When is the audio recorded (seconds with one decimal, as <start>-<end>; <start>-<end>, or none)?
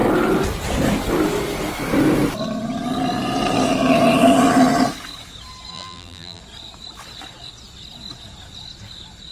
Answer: 0.0-5.7; 6.4-9.3